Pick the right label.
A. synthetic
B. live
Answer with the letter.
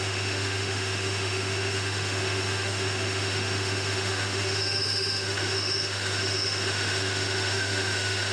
A